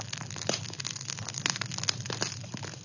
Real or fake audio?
real